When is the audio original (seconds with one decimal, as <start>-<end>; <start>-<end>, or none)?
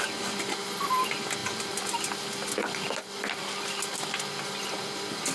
0.0-5.3